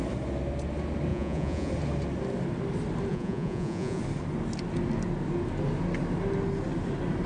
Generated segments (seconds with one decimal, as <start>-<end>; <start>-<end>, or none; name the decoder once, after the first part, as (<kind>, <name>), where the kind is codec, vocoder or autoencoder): 1.1-1.7 (vocoder, Vocos); 3.1-4.0